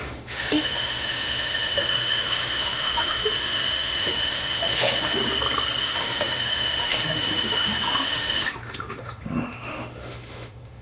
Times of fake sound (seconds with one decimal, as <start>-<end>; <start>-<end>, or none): 0.0-5.2; 5.8-10.8